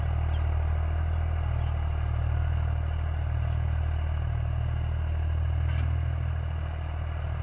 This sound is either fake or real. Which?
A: real